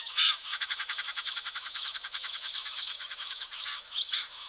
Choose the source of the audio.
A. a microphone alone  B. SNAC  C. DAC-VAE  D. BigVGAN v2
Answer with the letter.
C